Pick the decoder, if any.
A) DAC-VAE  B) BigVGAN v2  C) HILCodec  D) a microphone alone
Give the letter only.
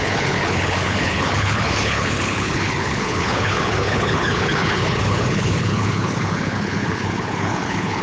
C